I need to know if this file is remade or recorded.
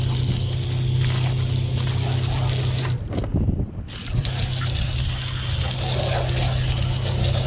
recorded